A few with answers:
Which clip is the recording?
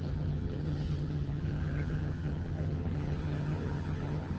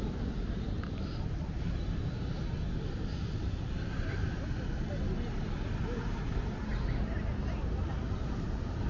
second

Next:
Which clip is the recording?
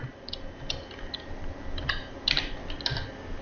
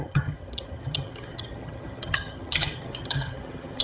first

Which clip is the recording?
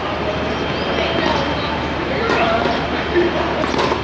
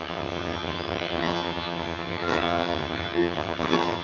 first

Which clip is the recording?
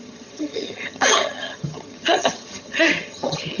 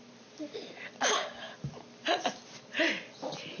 second